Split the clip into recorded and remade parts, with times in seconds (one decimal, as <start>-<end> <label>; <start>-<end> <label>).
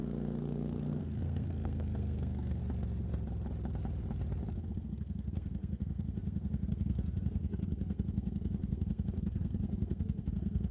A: 0.0-2.6 remade; 2.6-4.5 recorded; 4.5-10.7 remade